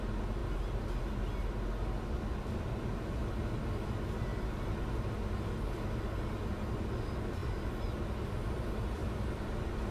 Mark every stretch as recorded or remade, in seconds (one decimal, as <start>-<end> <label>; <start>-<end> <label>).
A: 0.0-9.9 recorded